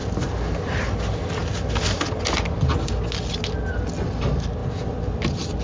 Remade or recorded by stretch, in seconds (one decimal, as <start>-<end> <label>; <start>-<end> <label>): 0.0-5.6 recorded